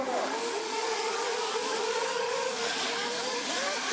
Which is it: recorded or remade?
remade